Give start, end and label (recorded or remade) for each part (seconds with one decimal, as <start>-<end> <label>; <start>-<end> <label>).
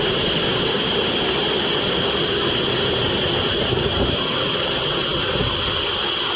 0.0-6.4 recorded